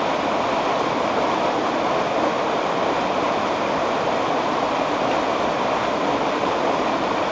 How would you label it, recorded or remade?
recorded